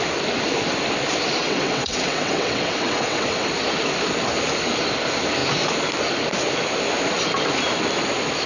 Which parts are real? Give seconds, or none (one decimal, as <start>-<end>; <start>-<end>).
0.0-1.4; 3.5-8.5